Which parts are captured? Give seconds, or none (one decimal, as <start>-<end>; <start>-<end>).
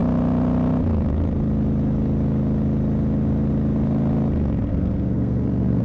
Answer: 0.0-4.7